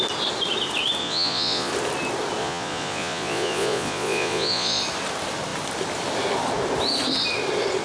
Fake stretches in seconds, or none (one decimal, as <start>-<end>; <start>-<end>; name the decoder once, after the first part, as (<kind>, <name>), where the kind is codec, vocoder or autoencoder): 1.0-1.7 (vocoder, Vocos); 2.4-4.8